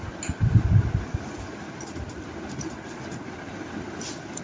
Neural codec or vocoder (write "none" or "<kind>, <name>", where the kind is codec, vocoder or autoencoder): none